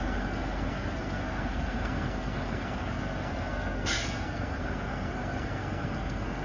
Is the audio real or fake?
fake